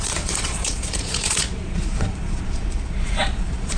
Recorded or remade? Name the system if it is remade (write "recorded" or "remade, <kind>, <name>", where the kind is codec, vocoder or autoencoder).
remade, vocoder, Vocos